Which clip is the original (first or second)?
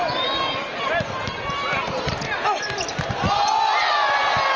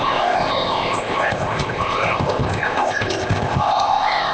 first